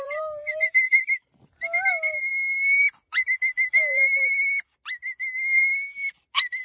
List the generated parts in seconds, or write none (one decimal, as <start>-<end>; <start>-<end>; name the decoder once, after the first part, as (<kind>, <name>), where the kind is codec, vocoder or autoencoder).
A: 0.0-1.4 (vocoder, BigVGAN v2); 1.9-2.3